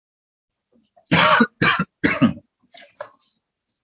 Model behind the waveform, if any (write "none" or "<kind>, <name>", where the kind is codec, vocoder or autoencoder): none